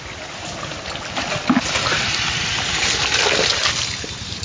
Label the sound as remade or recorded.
recorded